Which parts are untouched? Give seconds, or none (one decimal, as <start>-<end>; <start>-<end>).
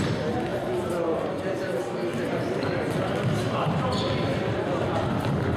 0.0-5.6